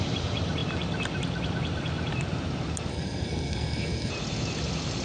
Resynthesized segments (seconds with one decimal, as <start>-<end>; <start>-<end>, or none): 2.9-4.1